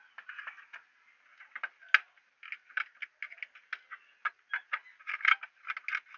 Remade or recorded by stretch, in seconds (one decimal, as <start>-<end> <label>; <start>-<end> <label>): 0.0-6.2 recorded